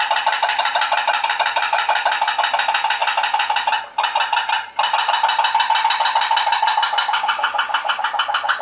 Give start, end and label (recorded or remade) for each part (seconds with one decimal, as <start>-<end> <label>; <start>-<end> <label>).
0.0-8.6 recorded